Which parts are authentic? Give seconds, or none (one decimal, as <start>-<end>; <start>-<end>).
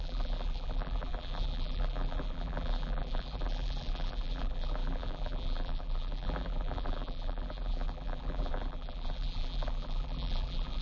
none